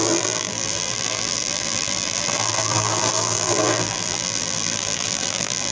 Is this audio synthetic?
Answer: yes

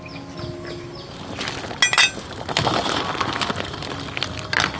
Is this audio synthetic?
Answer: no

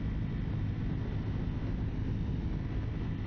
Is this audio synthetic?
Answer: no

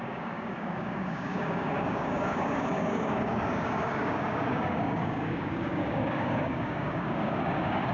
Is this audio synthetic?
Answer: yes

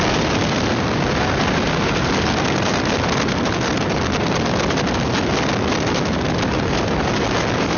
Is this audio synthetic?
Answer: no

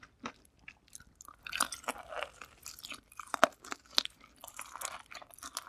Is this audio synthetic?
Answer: no